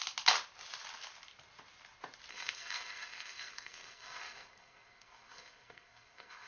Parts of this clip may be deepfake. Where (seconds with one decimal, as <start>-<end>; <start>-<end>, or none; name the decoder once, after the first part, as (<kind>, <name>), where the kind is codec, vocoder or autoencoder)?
2.3-6.5 (codec, SNAC)